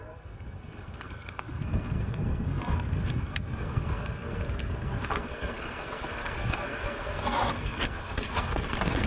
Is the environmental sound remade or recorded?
remade